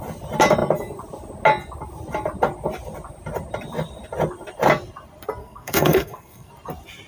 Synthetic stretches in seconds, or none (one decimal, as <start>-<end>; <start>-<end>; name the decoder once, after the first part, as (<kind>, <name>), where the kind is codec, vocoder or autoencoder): 5.4-6.5 (codec, SNAC)